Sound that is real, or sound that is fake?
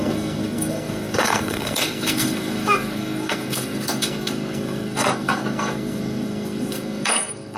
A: fake